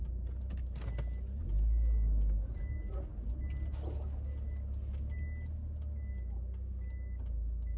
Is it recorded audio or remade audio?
recorded